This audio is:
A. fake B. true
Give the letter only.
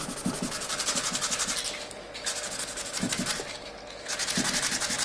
B